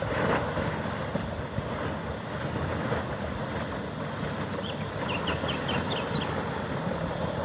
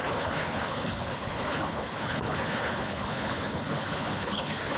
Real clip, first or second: first